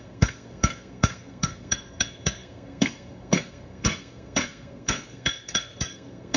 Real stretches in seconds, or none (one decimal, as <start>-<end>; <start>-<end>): none